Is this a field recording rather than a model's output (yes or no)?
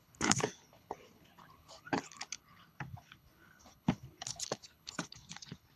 no